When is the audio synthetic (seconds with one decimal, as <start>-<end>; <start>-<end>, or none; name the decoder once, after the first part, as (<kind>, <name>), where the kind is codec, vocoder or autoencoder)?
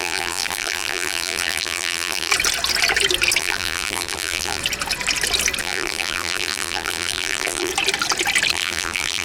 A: 0.0-2.3 (vocoder, BigVGAN v2); 3.4-4.6; 5.6-7.7; 8.5-9.2